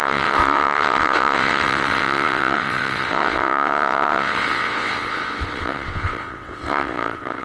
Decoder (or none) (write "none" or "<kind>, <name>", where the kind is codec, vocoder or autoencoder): vocoder, WaveNeXt